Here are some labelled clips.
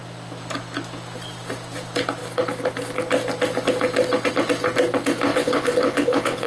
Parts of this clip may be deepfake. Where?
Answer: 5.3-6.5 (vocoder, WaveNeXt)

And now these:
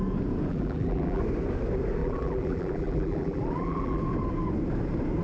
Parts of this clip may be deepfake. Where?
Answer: 0.5-1.2 (vocoder, BigVGAN v2); 2.0-4.0